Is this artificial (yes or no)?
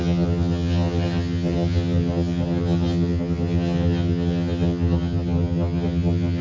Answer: yes